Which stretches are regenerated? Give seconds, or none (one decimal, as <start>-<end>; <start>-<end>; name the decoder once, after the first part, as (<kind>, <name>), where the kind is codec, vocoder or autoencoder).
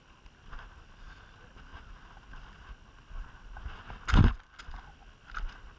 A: none